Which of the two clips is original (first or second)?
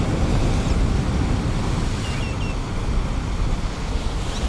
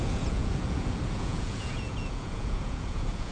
first